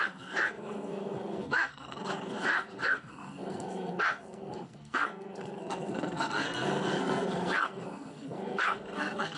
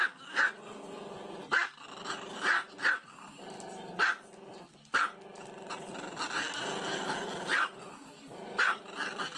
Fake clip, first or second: first